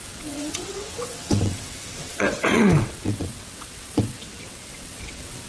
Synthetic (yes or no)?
yes